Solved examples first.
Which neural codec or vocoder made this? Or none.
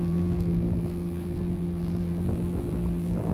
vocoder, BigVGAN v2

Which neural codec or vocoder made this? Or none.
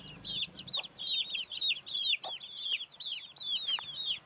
none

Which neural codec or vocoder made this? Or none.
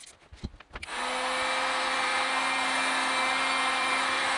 none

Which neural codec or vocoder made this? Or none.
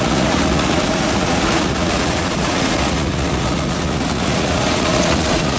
vocoder, Vocos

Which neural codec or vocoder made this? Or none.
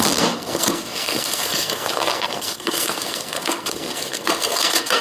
codec, SNAC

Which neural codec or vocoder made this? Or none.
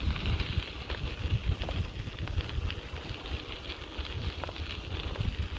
none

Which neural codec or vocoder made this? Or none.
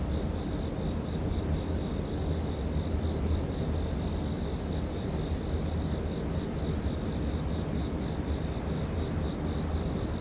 none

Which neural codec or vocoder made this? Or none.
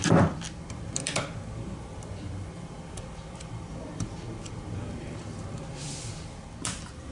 vocoder, BigVGAN v2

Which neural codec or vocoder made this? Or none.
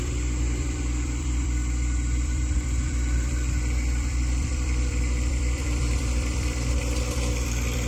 vocoder, BigVGAN v2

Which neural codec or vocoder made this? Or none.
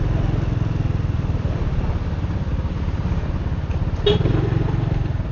none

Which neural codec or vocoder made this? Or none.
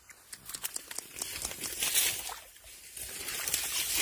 none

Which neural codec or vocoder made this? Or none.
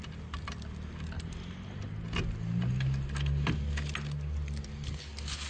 none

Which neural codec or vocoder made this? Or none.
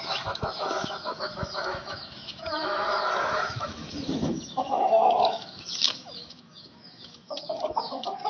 autoencoder, DAC-VAE